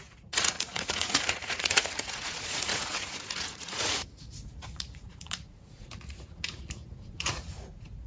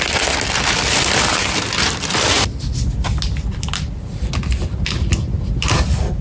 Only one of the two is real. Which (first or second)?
second